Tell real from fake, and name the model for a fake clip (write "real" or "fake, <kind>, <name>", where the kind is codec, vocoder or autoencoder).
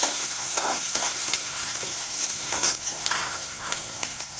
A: fake, codec, SNAC